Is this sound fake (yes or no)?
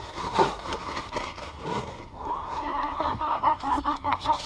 yes